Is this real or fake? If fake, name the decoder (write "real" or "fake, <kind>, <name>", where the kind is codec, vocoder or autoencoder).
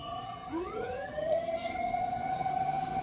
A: fake, vocoder, HiFi-GAN